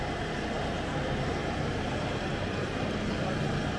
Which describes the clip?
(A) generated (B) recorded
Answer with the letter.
B